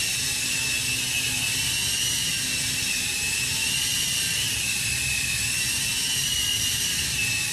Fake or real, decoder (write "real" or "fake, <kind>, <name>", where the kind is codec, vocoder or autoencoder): real